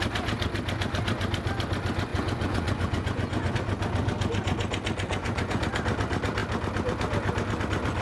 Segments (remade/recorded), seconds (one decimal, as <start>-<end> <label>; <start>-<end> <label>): 0.0-2.1 recorded; 2.1-3.5 remade; 3.5-5.1 recorded; 5.1-5.6 remade; 5.6-8.0 recorded